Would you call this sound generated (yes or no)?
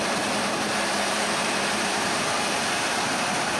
yes